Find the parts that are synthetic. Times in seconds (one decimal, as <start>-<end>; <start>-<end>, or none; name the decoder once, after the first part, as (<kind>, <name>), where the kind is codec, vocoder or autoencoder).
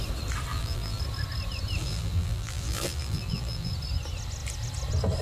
0.5-1.0 (vocoder, BigVGAN v2); 1.8-3.7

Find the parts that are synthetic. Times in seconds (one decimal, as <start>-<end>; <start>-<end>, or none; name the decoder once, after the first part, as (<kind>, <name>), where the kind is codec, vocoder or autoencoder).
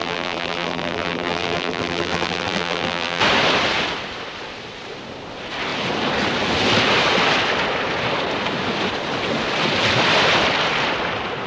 0.0-3.2 (vocoder, BigVGAN v2)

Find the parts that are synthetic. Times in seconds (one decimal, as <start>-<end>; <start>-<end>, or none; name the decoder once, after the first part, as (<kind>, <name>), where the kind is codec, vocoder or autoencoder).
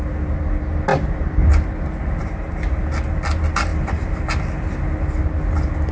0.9-1.5 (vocoder, BigVGAN v2); 2.2-2.7; 3.7-4.2